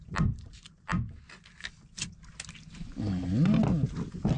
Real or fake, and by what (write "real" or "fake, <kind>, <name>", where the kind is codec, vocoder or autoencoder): real